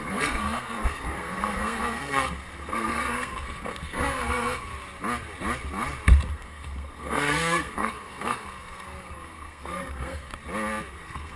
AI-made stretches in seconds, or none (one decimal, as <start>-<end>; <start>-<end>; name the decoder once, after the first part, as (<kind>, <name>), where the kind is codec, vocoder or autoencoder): 0.0-4.7 (codec, SNAC); 6.3-10.3; 10.9-11.4